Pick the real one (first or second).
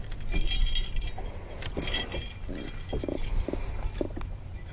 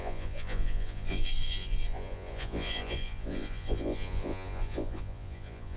first